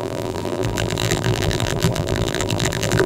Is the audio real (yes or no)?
no